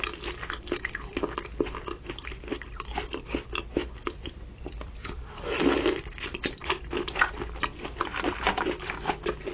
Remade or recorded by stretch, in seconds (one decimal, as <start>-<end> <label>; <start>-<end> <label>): 0.0-3.8 recorded; 3.8-6.7 remade; 6.7-9.5 recorded